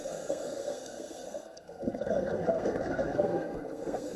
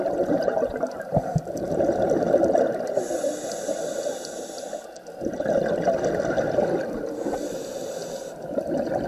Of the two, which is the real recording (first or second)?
second